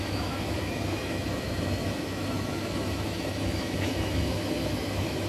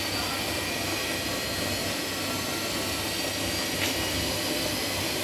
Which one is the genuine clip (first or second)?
second